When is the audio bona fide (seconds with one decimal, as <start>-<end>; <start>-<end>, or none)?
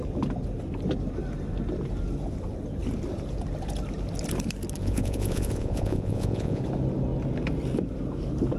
0.0-4.8; 6.6-8.6